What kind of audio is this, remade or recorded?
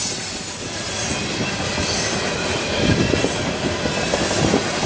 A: recorded